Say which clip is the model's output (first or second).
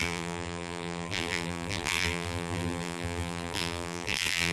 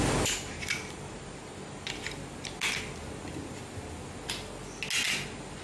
first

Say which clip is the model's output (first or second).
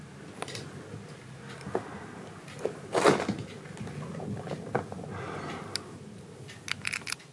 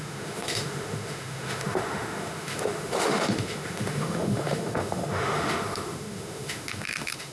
second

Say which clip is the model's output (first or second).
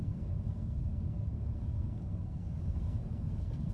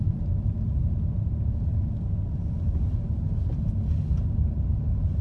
first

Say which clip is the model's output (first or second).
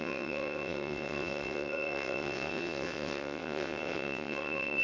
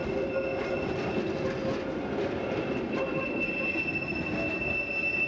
first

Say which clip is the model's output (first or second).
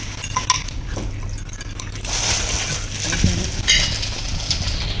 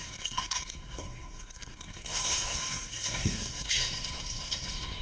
second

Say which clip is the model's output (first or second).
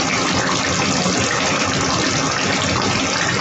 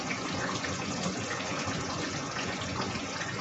second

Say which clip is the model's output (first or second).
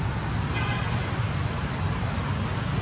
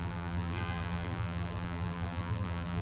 second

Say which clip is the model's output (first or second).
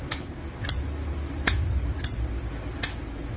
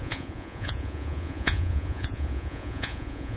second